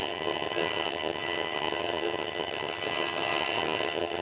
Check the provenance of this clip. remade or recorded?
remade